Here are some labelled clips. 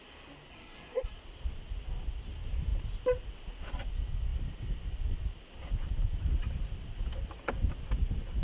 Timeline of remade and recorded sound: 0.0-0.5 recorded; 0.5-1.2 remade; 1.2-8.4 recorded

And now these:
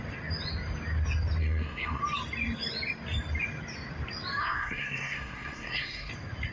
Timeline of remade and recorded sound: 0.0-1.4 recorded; 1.4-2.0 remade; 2.0-4.4 recorded; 4.4-6.1 remade; 6.1-6.5 recorded